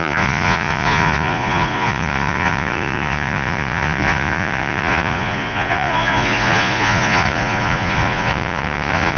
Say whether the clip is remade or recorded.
remade